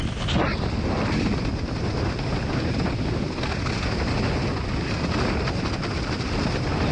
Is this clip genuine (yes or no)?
yes